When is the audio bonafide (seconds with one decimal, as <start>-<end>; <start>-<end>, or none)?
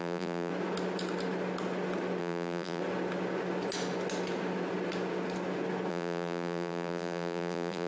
0.5-2.2; 2.8-5.9